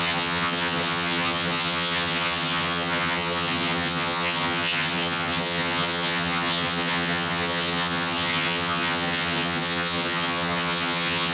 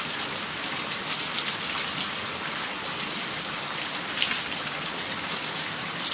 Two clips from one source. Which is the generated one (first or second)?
first